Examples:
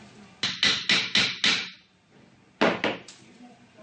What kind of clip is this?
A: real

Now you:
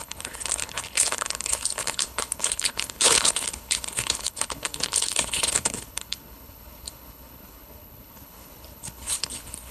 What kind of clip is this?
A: fake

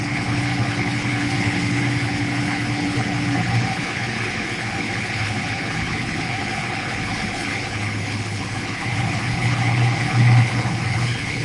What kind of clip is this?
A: fake